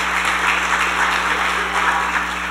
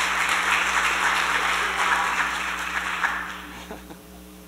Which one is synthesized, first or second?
second